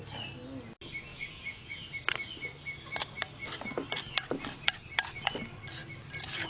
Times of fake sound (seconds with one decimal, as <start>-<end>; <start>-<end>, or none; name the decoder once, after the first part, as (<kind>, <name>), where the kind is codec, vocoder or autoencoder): 1.1-1.8 (vocoder, Vocos)